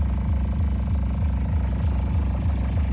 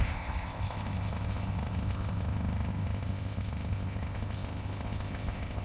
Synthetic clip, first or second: second